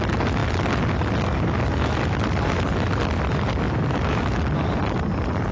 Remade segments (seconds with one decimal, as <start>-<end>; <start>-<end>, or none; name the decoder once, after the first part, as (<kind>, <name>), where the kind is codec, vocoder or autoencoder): none

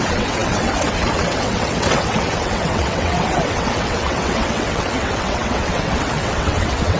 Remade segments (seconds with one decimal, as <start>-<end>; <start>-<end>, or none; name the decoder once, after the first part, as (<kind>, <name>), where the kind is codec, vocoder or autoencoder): 0.0-7.0 (vocoder, WaveNeXt)

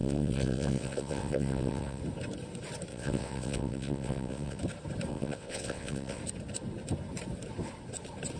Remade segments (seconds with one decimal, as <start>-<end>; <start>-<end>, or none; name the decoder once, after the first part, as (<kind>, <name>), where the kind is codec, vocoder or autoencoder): 0.0-2.0 (vocoder, WaveNeXt); 2.9-4.6; 5.1-6.2

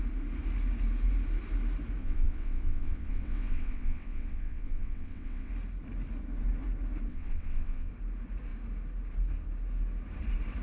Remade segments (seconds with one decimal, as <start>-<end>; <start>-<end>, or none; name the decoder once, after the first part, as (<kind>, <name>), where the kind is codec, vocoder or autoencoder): 2.0-5.5 (vocoder, WaveNeXt); 7.1-7.9